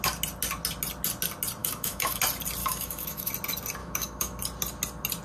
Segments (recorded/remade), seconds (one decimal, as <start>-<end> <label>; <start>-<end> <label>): 0.0-1.6 recorded; 1.6-2.2 remade; 2.2-2.6 recorded; 2.6-3.3 remade; 3.3-3.8 recorded; 3.8-4.4 remade; 4.4-5.2 recorded